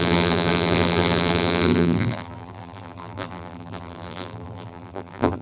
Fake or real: fake